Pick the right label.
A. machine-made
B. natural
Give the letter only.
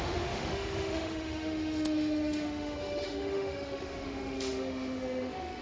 A